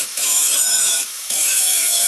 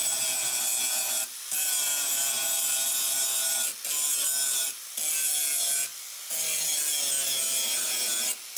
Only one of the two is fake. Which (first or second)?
first